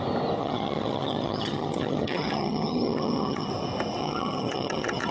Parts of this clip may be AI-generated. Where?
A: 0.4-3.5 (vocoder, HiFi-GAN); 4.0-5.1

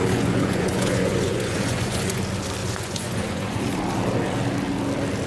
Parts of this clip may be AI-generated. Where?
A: 0.0-2.2 (vocoder, Vocos); 2.6-3.6

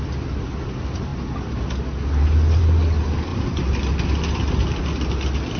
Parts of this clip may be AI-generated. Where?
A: none

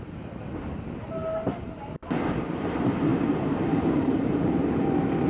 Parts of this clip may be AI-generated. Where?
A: 3.1-4.5 (vocoder, BigVGAN v2)

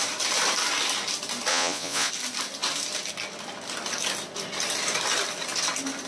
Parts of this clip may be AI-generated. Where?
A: 1.5-2.1 (vocoder, Vocos)

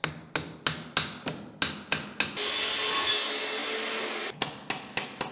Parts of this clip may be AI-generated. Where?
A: none

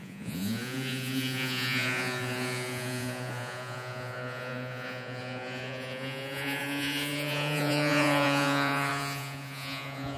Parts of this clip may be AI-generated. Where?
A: 0.0-10.2 (vocoder, Vocos)